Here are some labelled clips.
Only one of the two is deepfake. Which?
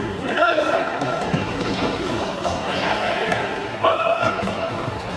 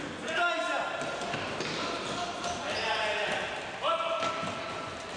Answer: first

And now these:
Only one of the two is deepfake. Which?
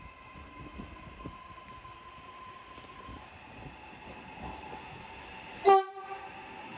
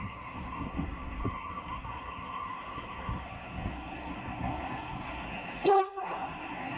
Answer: second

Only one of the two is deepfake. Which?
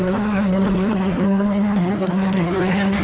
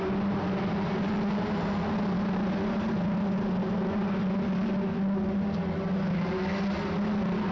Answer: first